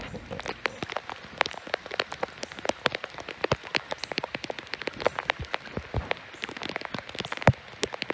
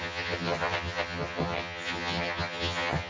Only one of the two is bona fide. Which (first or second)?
first